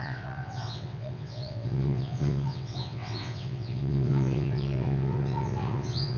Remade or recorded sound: remade